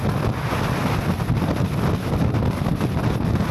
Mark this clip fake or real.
real